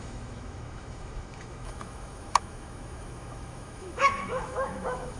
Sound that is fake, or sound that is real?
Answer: fake